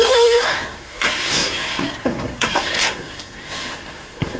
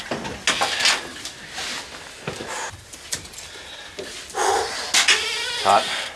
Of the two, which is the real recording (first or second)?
second